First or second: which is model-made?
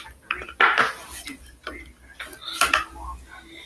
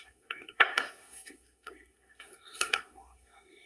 second